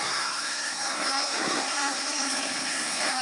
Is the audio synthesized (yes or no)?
yes